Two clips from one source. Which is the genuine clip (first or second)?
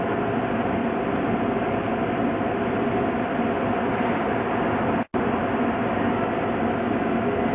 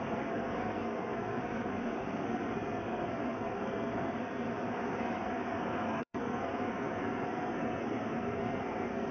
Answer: first